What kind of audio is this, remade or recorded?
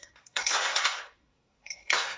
remade